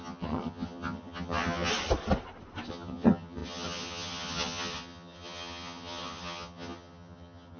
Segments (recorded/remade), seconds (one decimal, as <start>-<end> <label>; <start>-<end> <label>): 0.0-1.7 remade; 1.7-2.7 recorded; 2.7-7.6 remade